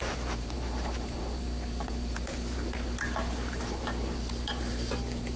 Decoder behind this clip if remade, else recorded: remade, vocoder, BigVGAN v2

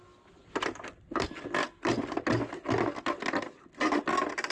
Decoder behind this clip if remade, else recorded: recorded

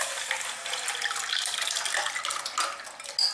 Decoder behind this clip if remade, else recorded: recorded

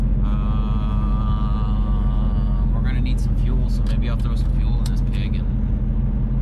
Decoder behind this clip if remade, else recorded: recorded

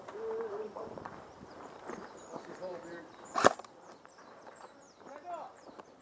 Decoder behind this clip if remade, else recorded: remade, vocoder, BigVGAN v2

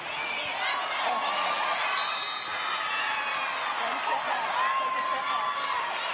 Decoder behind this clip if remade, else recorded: recorded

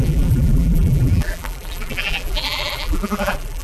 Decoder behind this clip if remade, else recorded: remade, vocoder, BigVGAN v2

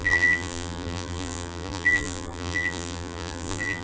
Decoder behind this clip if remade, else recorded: remade, vocoder, BigVGAN v2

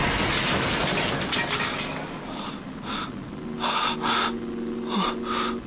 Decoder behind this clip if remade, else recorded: recorded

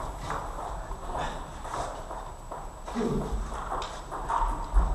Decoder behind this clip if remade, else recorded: recorded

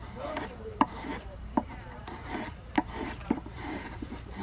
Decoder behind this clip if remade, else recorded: remade, vocoder, BigVGAN v2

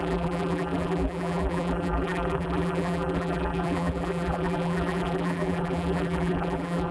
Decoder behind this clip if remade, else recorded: remade, vocoder, BigVGAN v2